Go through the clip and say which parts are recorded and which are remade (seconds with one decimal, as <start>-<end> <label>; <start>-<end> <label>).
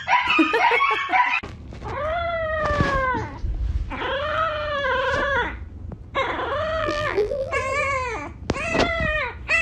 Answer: 0.0-6.8 recorded; 6.8-7.5 remade; 7.5-9.6 recorded